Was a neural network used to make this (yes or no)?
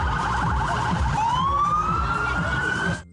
no